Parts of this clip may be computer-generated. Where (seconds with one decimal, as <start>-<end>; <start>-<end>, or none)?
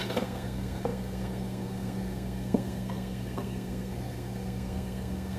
0.0-5.4